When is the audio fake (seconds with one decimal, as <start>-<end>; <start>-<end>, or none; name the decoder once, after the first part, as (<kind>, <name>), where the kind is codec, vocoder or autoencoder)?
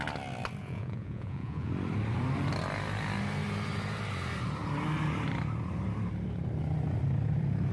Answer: 0.6-1.7 (vocoder, Vocos)